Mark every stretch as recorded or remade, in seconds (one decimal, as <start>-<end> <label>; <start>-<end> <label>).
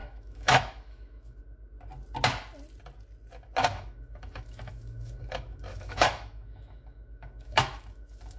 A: 0.0-1.4 remade; 1.4-3.6 recorded; 3.6-8.4 remade